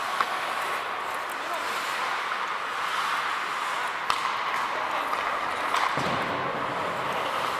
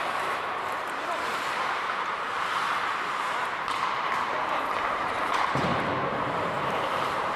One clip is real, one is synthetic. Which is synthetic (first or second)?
second